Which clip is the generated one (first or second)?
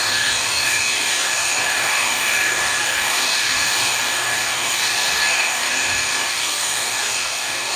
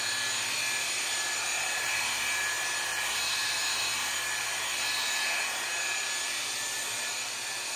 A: first